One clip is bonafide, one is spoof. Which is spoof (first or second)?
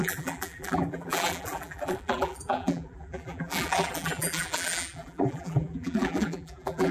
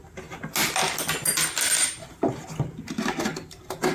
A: first